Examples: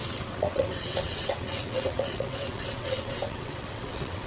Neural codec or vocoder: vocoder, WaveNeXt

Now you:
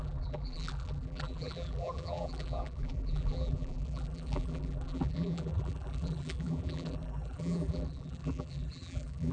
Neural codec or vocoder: vocoder, BigVGAN v2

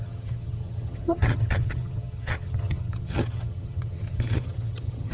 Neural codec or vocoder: vocoder, HiFi-GAN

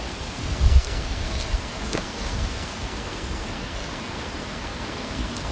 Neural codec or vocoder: codec, SNAC